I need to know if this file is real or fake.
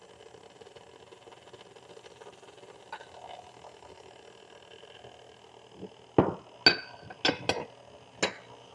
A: real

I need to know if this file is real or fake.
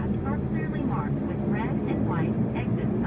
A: real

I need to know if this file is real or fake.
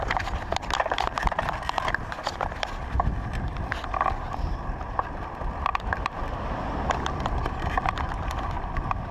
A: fake